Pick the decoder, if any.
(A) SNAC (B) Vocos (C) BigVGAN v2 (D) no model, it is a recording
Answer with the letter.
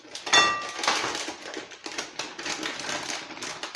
D